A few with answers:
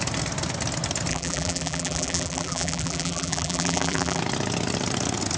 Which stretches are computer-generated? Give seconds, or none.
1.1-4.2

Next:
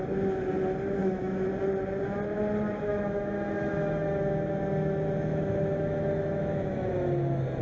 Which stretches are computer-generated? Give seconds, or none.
1.0-1.5; 2.9-6.9

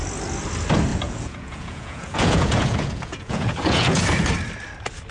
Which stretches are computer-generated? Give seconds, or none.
0.9-4.0

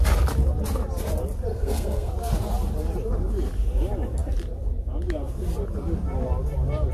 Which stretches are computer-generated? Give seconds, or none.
1.5-2.1

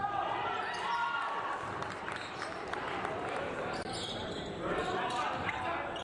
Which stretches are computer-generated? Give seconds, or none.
0.0-0.6; 1.0-4.3

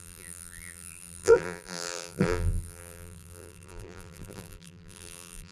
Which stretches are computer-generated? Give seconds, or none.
0.0-5.5

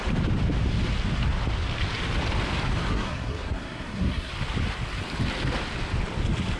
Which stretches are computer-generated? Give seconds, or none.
2.9-4.3